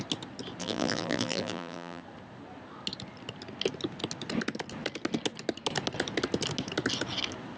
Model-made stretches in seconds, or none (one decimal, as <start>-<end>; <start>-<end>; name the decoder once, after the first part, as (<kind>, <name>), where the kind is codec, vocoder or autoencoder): 0.6-2.0 (vocoder, BigVGAN v2)